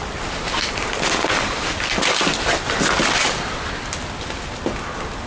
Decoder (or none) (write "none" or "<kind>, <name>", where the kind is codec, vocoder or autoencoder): none